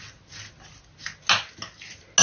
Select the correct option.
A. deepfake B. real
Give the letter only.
B